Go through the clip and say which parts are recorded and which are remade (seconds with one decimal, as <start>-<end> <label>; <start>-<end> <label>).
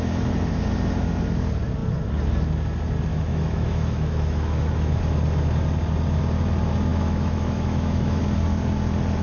0.0-3.1 recorded; 3.1-5.0 remade; 5.0-6.9 recorded; 6.9-8.2 remade; 8.2-9.2 recorded